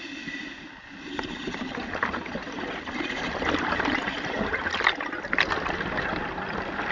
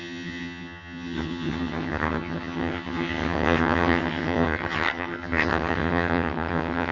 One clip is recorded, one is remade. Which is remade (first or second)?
second